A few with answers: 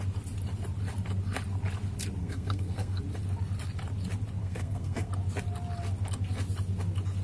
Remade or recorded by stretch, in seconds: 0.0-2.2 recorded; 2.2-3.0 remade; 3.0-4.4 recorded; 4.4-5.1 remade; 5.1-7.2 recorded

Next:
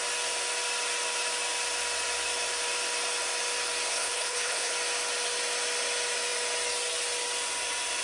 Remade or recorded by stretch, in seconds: 0.0-3.9 recorded; 3.9-4.7 remade; 4.7-8.0 recorded

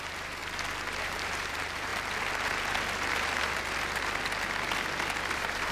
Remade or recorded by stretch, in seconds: 0.0-0.4 remade; 0.4-1.0 recorded; 1.0-1.9 remade; 1.9-5.3 recorded; 5.3-5.7 remade

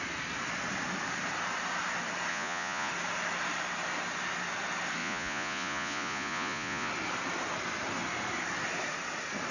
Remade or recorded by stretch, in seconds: 0.0-2.3 recorded; 2.3-2.9 remade; 2.9-5.0 recorded; 5.0-6.9 remade; 6.9-9.5 recorded

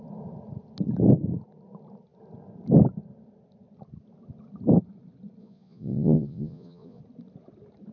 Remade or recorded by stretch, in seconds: 0.0-5.4 recorded; 5.4-7.0 remade; 7.0-7.9 recorded